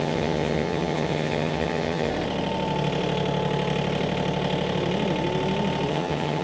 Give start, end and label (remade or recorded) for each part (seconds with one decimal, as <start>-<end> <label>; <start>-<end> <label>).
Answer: 0.0-2.1 remade; 2.1-5.9 recorded; 5.9-6.4 remade